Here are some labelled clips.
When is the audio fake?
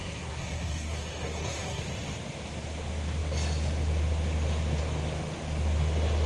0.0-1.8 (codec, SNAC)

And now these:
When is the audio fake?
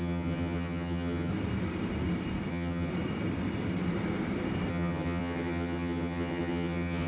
0.0-1.3 (vocoder, HiFi-GAN); 2.5-2.9; 4.7-7.1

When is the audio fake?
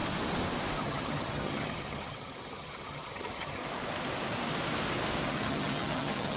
0.8-3.6 (vocoder, HiFi-GAN); 5.3-6.4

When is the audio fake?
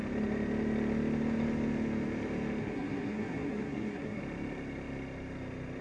2.6-4.2 (codec, SNAC)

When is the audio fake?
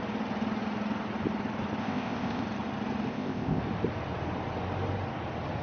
1.8-2.4 (codec, ZipCodec); 3.1-3.6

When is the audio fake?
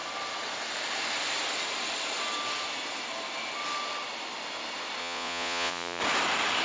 5.0-6.0 (vocoder, Vocos)